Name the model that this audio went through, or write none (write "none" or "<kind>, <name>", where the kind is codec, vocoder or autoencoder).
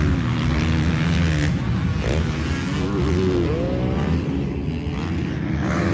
none